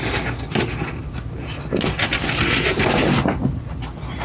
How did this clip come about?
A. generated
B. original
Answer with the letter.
B